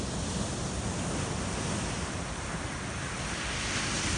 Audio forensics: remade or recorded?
recorded